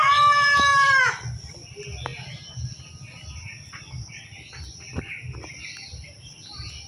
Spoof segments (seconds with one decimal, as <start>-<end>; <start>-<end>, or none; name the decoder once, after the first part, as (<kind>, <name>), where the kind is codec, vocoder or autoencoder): none